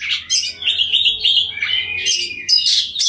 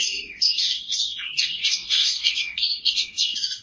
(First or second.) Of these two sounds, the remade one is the second